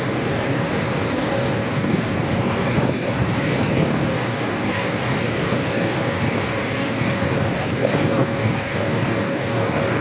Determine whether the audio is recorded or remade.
remade